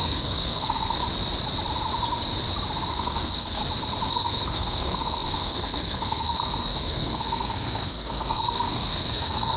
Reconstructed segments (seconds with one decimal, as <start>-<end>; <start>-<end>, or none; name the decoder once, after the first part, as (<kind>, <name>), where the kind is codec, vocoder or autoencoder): 0.0-1.0 (codec, SNAC); 2.9-3.6; 4.1-9.6